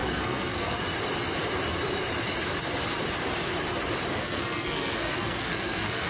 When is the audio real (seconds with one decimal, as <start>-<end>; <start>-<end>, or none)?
0.8-4.2